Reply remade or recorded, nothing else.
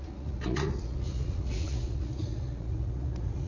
remade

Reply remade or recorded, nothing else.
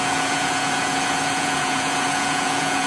remade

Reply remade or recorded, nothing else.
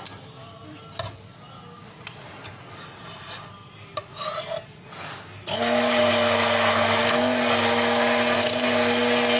recorded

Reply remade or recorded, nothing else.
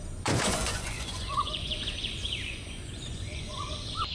remade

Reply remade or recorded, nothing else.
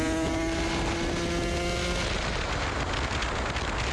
recorded